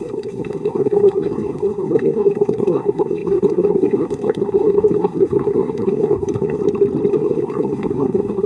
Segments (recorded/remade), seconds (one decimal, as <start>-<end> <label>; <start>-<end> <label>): 0.0-6.6 remade; 6.6-7.1 recorded; 7.1-8.5 remade